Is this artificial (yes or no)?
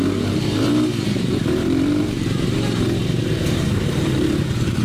yes